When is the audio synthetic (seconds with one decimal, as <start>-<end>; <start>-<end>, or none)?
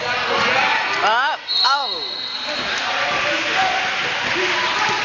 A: none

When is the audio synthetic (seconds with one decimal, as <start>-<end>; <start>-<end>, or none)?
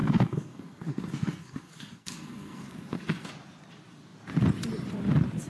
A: 0.0-3.3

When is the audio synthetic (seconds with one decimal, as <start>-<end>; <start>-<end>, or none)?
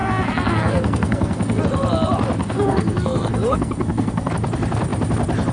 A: 0.0-1.6; 2.4-4.3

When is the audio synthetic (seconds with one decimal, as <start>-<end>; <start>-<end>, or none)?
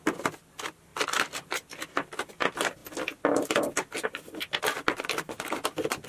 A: none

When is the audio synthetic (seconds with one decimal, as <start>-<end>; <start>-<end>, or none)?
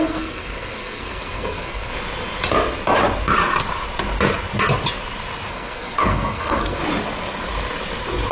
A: 0.0-1.9; 5.5-6.8